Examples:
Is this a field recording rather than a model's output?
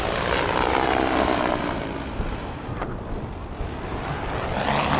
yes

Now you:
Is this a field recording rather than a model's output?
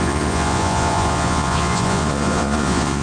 no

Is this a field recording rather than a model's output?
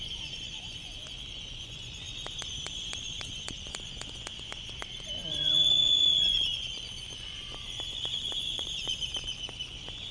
no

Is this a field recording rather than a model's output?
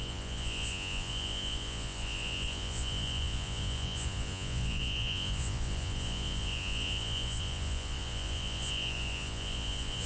no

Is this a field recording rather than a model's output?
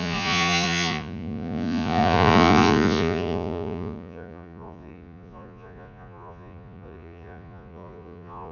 no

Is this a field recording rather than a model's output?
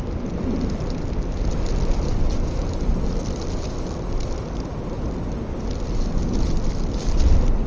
yes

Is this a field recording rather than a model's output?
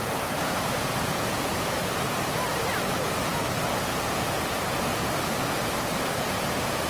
no